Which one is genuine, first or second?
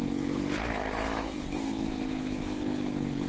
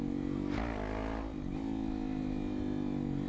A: second